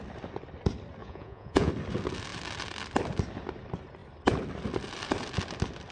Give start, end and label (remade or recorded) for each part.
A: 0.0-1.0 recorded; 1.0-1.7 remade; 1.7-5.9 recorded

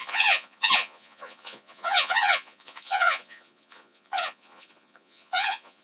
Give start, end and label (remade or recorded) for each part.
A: 0.0-5.8 remade

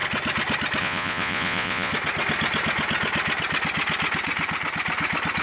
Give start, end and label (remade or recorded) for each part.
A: 0.0-0.8 recorded; 0.8-1.9 remade; 1.9-5.4 recorded

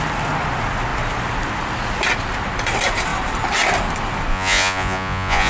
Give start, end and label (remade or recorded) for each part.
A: 0.0-4.3 recorded; 4.3-5.5 remade

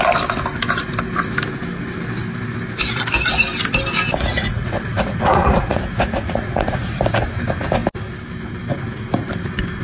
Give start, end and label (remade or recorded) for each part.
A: 0.0-4.3 recorded; 4.3-7.0 remade; 7.0-9.8 recorded

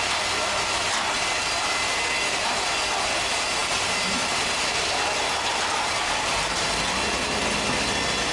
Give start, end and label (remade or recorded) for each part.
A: 0.0-8.3 recorded